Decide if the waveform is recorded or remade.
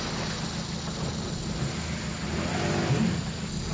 recorded